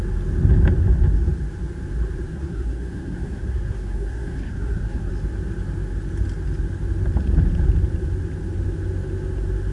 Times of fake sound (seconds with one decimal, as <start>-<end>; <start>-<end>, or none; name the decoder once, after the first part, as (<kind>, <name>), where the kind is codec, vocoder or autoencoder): 2.3-5.1 (codec, SNAC)